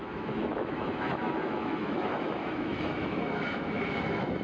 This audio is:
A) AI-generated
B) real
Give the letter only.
A